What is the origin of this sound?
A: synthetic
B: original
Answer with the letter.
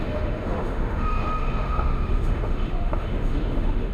A